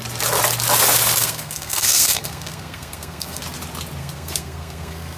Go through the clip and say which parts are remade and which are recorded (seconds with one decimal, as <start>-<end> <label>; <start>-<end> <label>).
0.0-1.2 recorded; 1.2-3.4 remade; 3.4-4.0 recorded; 4.0-5.2 remade